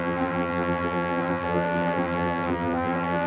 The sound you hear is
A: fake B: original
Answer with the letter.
A